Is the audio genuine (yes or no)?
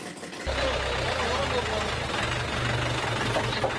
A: yes